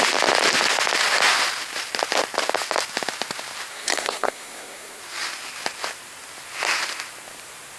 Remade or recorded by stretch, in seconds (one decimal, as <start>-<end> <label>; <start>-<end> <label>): 0.0-3.7 recorded; 3.7-5.0 remade; 5.0-7.8 recorded